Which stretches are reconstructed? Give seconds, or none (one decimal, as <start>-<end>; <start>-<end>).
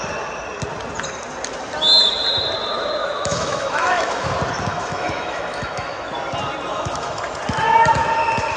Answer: 3.0-4.3; 4.7-6.1; 6.7-7.2